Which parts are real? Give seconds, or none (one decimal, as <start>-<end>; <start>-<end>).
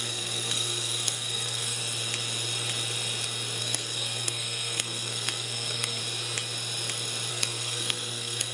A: 1.8-3.6; 6.0-7.3